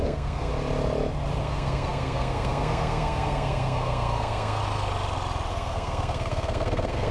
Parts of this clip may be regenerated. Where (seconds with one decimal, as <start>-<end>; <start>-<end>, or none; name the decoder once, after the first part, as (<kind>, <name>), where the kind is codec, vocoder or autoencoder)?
0.0-0.5 (codec, SNAC); 1.4-4.6; 5.5-7.1